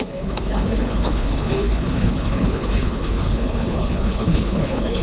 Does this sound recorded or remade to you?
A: remade